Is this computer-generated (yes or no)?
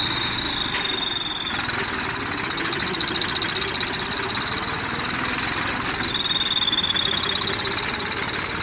no